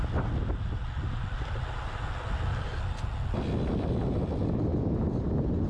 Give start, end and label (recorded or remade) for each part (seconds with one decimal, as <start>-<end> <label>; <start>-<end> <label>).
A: 0.0-5.7 recorded